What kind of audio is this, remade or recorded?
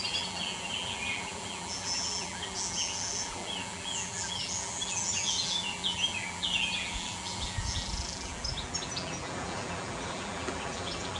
remade